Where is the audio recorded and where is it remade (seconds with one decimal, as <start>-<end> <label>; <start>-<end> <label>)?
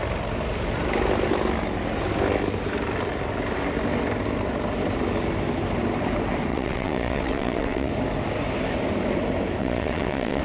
0.0-6.5 recorded; 6.5-7.9 remade; 7.9-9.6 recorded; 9.6-10.4 remade